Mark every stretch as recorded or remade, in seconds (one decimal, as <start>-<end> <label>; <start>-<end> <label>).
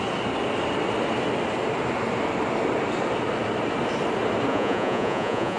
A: 0.0-4.5 recorded; 4.5-5.6 remade